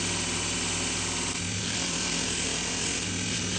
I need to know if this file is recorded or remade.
recorded